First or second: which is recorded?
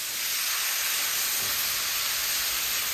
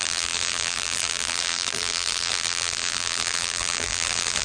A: first